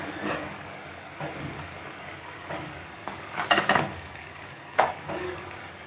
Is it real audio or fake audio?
fake